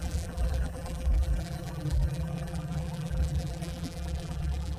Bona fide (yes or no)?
no